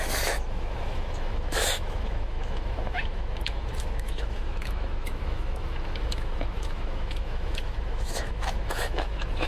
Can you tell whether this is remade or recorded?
remade